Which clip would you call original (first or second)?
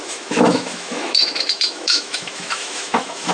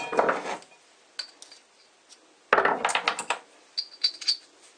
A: second